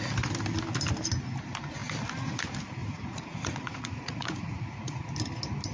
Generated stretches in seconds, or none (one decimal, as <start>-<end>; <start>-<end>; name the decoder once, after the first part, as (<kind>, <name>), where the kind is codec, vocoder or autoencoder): 2.8-5.0 (vocoder, Vocos)